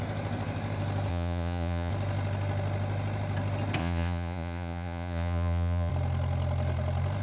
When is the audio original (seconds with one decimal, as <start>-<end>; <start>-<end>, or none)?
0.0-1.1; 1.9-3.8; 5.9-7.2